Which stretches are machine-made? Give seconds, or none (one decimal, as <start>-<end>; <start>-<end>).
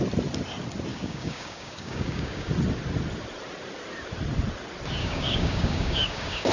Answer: 0.9-2.5; 5.0-6.5